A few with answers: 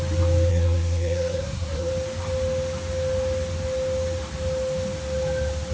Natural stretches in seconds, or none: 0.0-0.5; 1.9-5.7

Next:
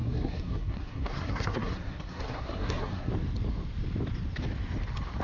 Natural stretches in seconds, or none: 3.1-5.2